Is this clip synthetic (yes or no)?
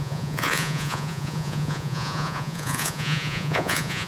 yes